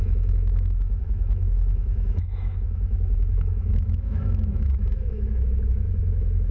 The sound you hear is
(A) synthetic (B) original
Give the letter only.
A